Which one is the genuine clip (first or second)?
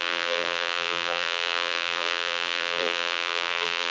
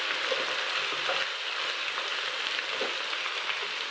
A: second